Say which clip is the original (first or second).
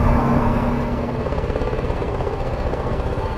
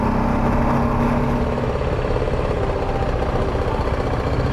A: second